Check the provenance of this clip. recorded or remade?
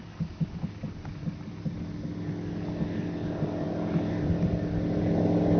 recorded